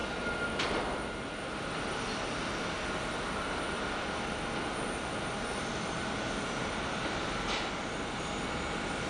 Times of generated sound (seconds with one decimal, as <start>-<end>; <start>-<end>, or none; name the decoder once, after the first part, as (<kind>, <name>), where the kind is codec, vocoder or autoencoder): none